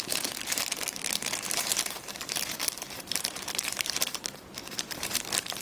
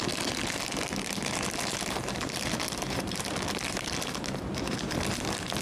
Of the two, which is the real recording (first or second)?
second